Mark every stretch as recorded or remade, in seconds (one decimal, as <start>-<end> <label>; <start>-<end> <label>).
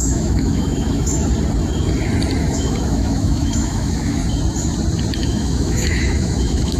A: 0.0-1.2 remade; 1.2-2.4 recorded; 2.4-4.2 remade; 4.2-5.2 recorded; 5.2-6.8 remade